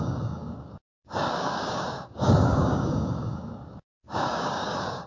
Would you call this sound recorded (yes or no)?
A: no